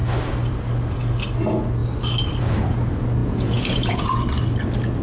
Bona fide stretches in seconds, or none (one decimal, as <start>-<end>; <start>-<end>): 0.0-3.2; 4.2-5.0